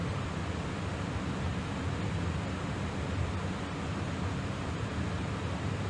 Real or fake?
real